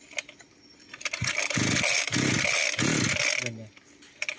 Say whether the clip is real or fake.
real